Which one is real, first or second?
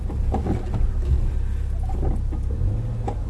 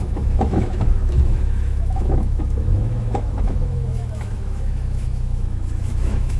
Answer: first